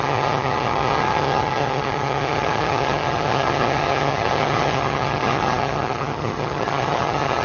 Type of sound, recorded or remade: remade